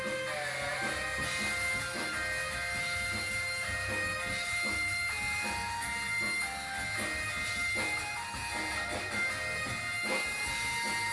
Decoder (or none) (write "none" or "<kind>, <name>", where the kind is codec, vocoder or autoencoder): none